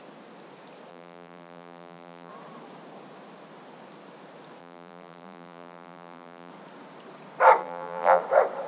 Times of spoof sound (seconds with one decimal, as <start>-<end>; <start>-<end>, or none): 0.9-2.3; 4.6-6.5; 7.6-8.2